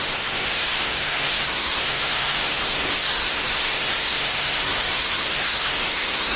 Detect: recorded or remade remade